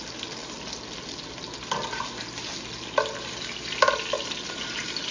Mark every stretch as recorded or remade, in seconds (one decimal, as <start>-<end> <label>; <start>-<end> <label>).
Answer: 0.0-5.1 recorded